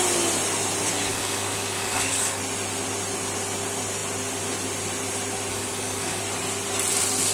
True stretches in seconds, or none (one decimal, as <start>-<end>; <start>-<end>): 0.0-1.1; 2.4-5.5; 6.2-7.3